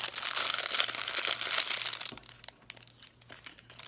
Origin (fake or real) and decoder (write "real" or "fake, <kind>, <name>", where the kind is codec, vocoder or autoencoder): real